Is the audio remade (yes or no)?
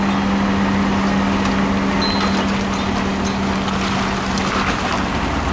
no